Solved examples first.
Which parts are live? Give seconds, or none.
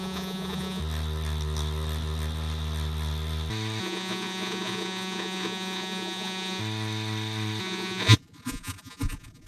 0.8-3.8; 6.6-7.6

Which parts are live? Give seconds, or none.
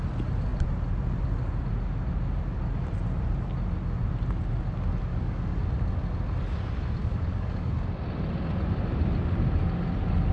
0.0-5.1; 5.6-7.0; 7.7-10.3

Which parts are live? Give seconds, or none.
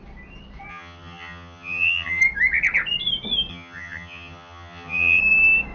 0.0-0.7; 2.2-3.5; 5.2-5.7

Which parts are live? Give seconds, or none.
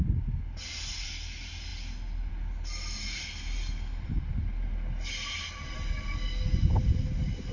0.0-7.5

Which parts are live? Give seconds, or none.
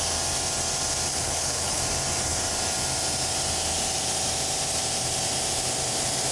0.0-1.1; 1.8-6.3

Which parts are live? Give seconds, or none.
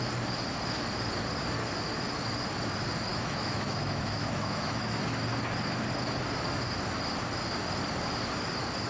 0.0-3.1; 5.0-8.9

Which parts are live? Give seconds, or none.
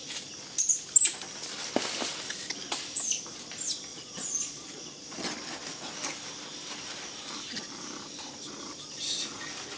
0.0-3.9; 4.8-9.8